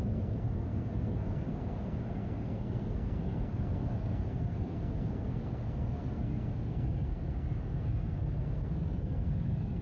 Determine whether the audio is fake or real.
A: fake